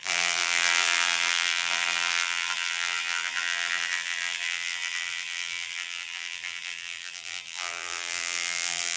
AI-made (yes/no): yes